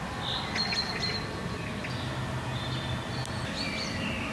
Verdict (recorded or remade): recorded